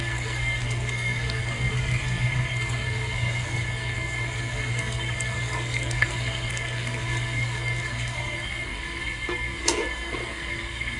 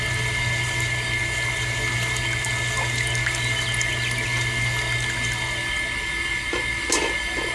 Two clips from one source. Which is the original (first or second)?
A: second